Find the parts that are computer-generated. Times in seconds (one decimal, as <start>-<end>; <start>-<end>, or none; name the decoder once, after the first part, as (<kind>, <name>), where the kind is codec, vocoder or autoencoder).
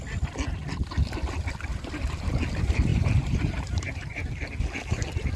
1.7-2.2 (vocoder, BigVGAN v2); 2.9-4.3